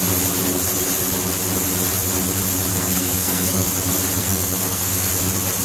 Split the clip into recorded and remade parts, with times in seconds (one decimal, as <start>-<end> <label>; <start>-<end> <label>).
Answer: 0.0-2.7 recorded; 2.7-3.7 remade; 3.7-4.2 recorded; 4.2-5.1 remade; 5.1-5.6 recorded